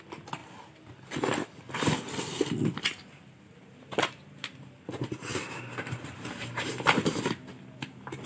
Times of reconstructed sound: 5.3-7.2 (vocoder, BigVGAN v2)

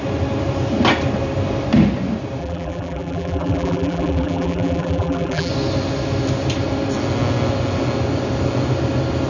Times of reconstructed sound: 2.4-5.5 (vocoder, BigVGAN v2)

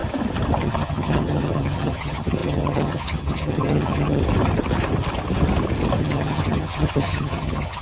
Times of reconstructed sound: 0.6-4.2 (vocoder, HiFi-GAN); 6.0-7.8

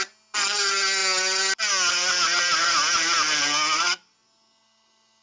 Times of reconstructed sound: none

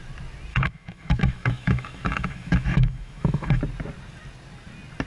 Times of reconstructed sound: 0.5-3.6 (autoencoder, DAC-VAE)

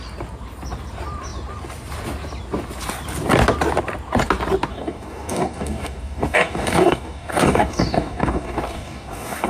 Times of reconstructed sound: 4.7-9.5 (codec, DAC)